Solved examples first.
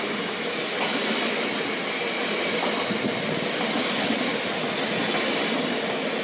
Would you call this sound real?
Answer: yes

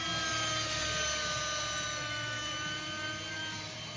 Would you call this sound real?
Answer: yes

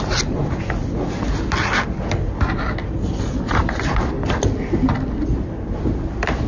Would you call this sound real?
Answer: yes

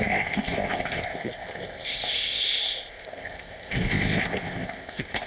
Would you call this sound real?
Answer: no